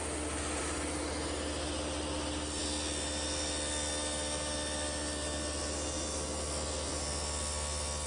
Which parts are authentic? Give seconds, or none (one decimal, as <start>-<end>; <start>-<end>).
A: 0.0-8.1